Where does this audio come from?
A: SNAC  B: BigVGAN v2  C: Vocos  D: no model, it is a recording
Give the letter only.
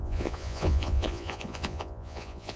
C